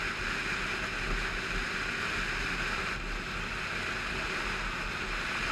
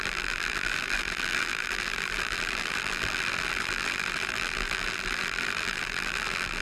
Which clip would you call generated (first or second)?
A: second